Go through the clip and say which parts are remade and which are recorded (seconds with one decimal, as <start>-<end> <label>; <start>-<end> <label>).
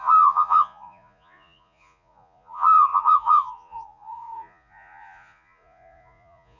0.0-6.6 remade